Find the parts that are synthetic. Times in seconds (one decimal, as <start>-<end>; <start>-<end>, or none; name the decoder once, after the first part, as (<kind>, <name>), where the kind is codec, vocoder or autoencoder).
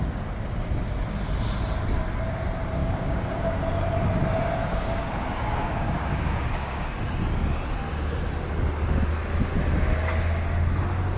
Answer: 2.8-3.6 (codec, DAC); 4.6-7.0